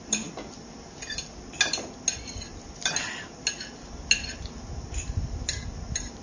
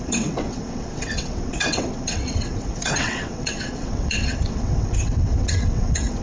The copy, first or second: second